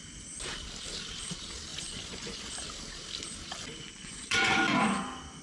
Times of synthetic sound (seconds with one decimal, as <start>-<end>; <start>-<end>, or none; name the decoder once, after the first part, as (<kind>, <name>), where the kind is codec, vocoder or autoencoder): 1.7-2.5 (vocoder, Vocos); 4.0-4.8